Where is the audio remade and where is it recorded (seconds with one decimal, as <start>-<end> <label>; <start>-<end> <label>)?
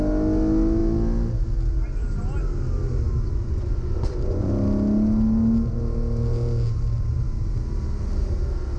0.0-3.3 recorded; 3.3-4.5 remade; 4.5-8.8 recorded